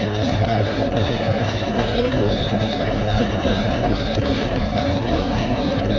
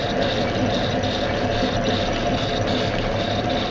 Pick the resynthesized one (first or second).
first